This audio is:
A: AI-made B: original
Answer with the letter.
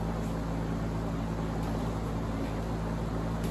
B